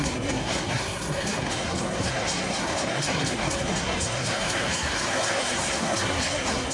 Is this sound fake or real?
fake